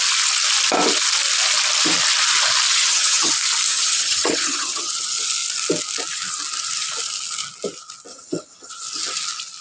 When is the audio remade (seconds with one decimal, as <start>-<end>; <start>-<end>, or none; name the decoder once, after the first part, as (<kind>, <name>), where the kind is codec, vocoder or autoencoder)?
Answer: 2.7-3.3 (vocoder, HiFi-GAN); 3.7-4.9; 8.1-8.7